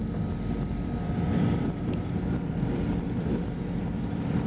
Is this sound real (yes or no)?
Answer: no